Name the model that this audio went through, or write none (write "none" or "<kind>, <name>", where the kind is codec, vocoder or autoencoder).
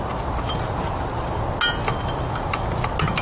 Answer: none